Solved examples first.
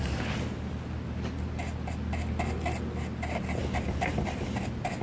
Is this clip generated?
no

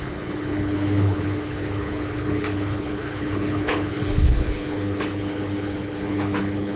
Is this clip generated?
yes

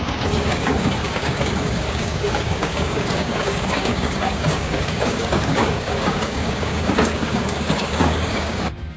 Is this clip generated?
yes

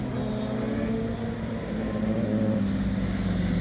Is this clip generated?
no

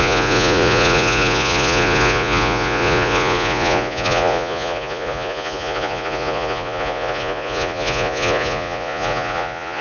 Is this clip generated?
yes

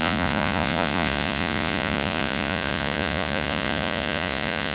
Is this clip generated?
yes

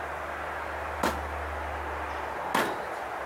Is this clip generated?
no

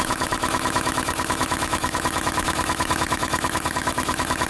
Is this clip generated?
yes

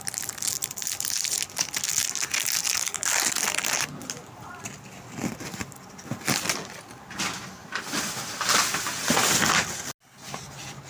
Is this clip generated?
no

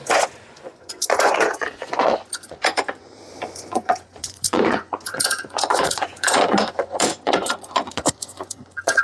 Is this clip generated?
yes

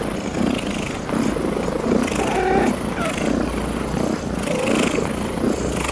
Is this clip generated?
no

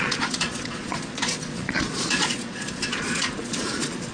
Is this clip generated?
yes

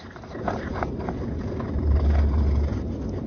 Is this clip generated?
no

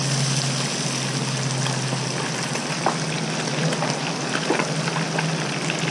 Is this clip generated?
no